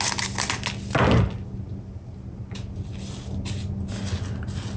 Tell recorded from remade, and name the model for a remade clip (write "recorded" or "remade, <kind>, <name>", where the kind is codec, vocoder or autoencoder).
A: recorded